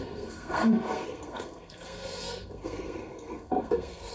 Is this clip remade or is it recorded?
remade